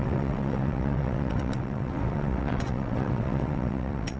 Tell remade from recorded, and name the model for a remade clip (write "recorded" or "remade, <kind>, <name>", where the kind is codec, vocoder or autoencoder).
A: remade, vocoder, WaveNeXt